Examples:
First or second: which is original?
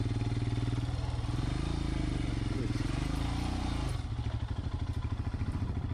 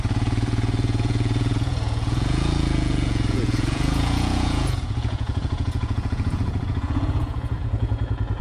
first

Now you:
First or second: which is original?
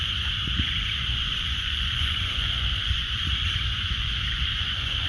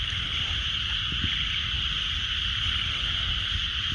second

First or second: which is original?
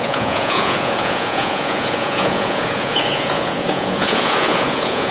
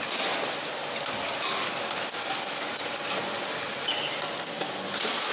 second